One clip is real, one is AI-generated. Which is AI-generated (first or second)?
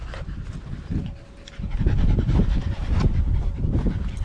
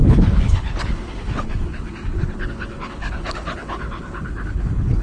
second